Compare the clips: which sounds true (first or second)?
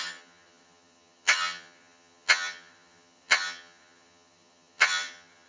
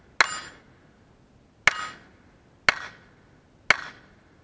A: second